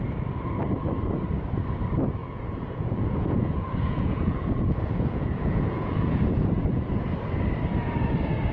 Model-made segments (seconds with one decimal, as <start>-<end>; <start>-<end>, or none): 2.2-7.0

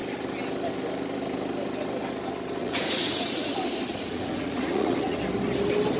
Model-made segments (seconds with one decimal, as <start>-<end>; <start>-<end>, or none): 2.6-3.5; 3.9-5.2

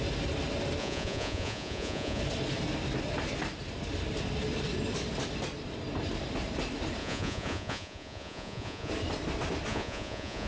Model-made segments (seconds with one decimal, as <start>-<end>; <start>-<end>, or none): 0.8-2.2; 7.0-8.9; 9.7-10.5